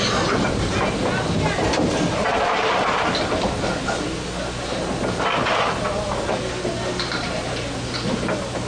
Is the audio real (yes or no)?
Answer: yes